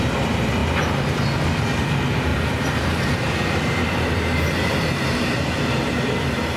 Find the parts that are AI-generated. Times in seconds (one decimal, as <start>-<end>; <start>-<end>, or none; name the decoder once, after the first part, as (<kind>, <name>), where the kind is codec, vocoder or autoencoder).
2.3-6.6 (vocoder, BigVGAN v2)